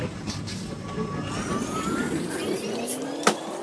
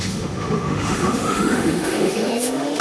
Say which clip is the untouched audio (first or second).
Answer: first